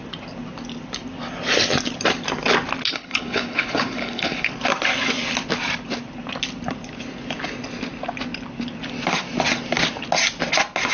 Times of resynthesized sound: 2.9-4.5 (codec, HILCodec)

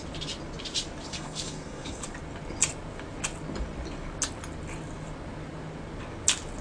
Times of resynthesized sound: 1.1-2.0 (codec, SNAC)

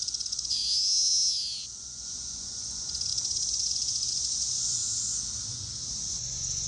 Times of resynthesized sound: 0.0-0.6 (vocoder, Vocos); 1.8-4.8; 5.5-6.7

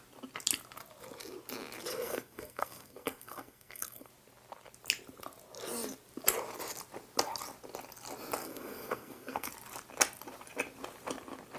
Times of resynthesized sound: 1.9-4.1 (codec, SNAC); 8.4-9.5